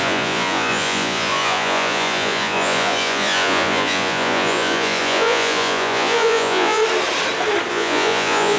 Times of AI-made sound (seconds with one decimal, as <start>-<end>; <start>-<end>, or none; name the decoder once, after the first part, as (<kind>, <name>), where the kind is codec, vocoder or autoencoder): 0.0-6.8 (vocoder, Vocos); 7.7-8.6